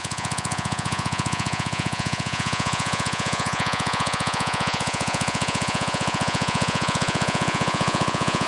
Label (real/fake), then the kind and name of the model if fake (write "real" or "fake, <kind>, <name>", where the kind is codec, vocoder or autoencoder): fake, vocoder, Vocos